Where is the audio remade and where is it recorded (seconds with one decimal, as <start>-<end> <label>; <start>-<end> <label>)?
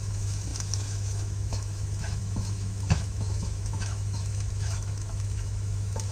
0.0-6.1 remade